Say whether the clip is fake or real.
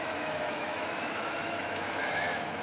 fake